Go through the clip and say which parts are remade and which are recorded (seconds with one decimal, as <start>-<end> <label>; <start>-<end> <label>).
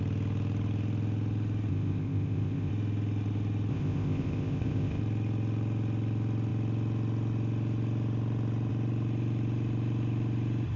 0.0-1.7 recorded; 1.7-2.7 remade; 2.7-3.7 recorded; 3.7-5.0 remade; 5.0-10.8 recorded